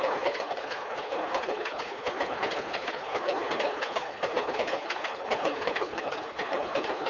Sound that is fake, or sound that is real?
fake